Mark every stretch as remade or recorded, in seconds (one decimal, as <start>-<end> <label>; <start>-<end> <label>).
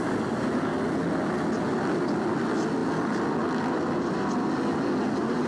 0.0-5.5 recorded